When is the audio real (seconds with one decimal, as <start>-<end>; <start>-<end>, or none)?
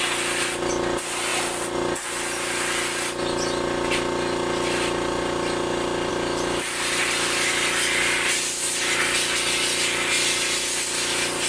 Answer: 0.0-11.5